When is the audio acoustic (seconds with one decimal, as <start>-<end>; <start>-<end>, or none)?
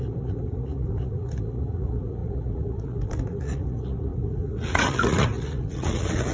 none